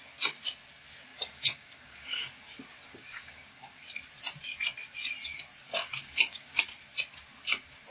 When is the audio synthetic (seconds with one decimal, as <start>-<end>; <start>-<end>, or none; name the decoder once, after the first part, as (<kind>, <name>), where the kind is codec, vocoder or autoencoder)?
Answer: 1.1-2.3 (codec, DAC); 2.9-3.8; 5.8-6.6